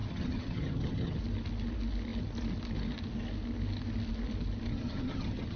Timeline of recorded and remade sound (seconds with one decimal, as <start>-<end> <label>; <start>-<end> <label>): 0.0-1.2 remade; 1.2-4.7 recorded; 4.7-5.6 remade